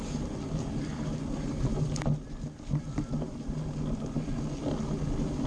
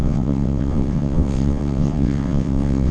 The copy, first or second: second